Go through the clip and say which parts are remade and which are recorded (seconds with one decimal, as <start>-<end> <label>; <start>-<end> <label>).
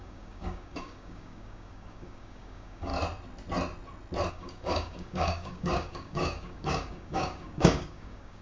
0.0-2.9 remade; 2.9-4.3 recorded; 4.3-8.4 remade